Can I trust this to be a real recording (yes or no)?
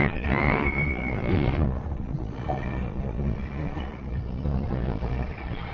no